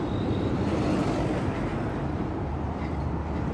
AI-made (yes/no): no